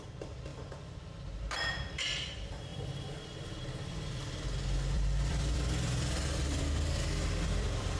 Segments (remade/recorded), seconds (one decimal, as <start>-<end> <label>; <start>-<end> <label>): 0.0-0.5 remade; 0.5-1.4 recorded; 1.4-8.0 remade